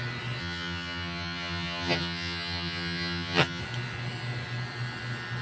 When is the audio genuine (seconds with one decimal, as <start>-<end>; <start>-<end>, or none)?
0.0-0.4; 3.6-5.4